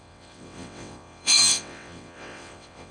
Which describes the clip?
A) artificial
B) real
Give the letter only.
A